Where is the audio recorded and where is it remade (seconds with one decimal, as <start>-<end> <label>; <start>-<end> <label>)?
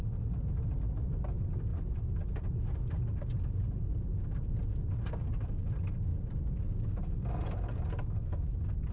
0.0-8.9 recorded